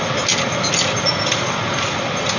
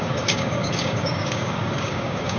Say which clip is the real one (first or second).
first